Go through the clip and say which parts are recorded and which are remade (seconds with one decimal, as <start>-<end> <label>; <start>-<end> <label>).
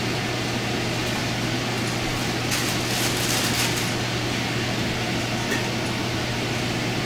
0.0-7.1 recorded